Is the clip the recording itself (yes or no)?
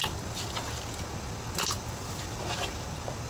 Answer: yes